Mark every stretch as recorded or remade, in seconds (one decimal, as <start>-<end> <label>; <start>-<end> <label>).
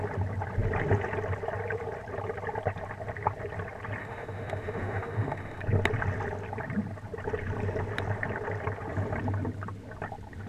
0.0-4.0 recorded; 4.0-5.6 remade; 5.6-10.5 recorded